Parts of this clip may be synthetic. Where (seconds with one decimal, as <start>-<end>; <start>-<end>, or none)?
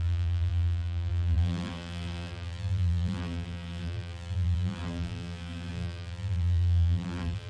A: 0.0-7.5